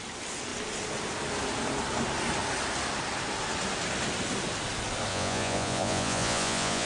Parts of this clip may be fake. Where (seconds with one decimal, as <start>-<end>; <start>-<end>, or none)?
5.1-6.9